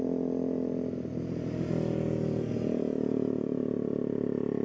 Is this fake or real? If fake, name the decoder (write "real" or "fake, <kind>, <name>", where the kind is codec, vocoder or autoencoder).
real